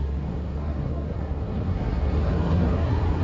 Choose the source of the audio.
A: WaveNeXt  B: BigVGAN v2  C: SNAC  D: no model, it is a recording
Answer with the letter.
C